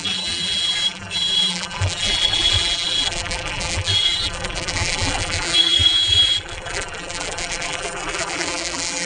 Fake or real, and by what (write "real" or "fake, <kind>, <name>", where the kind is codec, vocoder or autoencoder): fake, vocoder, BigVGAN v2